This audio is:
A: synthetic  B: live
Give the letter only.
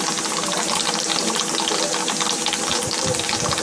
B